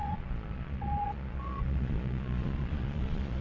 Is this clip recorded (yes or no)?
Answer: no